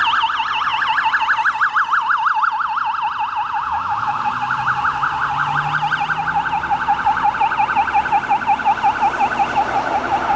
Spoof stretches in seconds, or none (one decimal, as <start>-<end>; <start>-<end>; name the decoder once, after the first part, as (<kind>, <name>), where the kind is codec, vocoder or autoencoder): 3.7-4.3 (codec, DAC)